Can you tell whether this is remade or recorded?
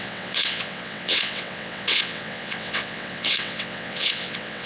remade